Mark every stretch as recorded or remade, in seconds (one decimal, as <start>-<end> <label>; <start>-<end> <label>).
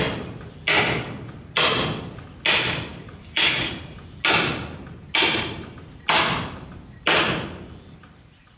0.0-2.9 recorded; 2.9-3.7 remade; 3.7-8.6 recorded